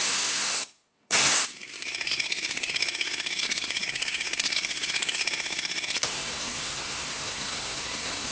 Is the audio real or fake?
fake